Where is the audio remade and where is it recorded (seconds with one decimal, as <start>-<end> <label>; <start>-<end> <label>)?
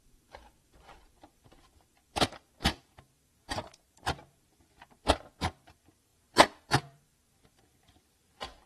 0.0-8.7 remade